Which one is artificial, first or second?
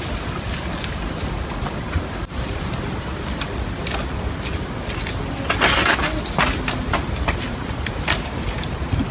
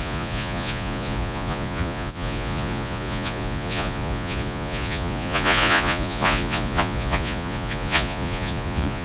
second